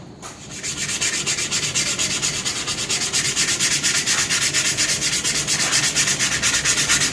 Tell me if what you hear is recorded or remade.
recorded